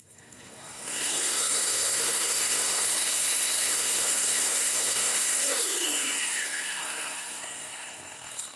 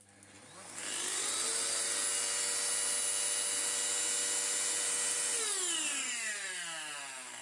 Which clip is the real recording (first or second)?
second